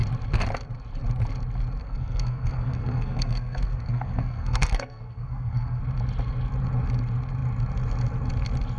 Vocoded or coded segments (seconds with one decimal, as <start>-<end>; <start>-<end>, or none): 1.8-5.8